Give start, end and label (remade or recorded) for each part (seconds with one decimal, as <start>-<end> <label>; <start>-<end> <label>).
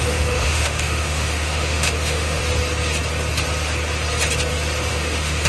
0.0-2.4 remade; 2.4-4.9 recorded; 4.9-5.5 remade